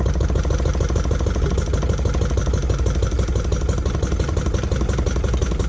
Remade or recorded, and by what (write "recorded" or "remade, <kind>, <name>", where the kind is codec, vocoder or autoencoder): recorded